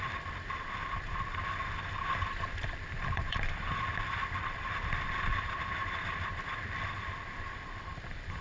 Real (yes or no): no